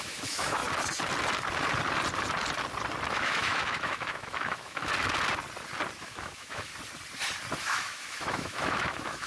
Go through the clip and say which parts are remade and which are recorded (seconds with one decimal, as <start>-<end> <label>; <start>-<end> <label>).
0.0-0.6 remade; 0.6-3.1 recorded; 3.1-4.9 remade; 4.9-6.0 recorded; 6.0-6.7 remade; 6.7-7.6 recorded; 7.6-9.3 remade